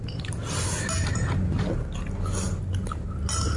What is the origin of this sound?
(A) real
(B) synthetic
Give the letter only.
A